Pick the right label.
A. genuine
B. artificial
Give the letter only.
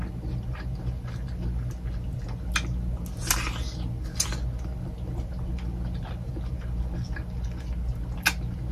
A